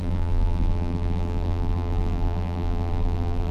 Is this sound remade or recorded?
remade